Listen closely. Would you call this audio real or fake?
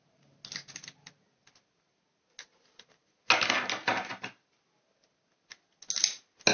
real